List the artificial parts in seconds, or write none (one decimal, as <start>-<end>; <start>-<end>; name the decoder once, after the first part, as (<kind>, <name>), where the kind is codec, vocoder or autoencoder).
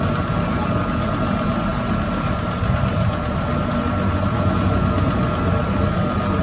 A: none